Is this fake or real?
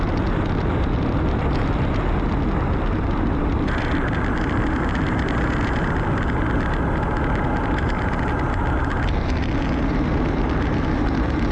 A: real